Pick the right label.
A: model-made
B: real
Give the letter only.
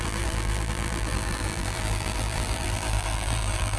A